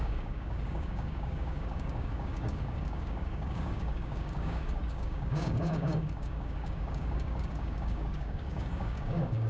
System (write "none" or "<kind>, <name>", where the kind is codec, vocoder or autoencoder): codec, DAC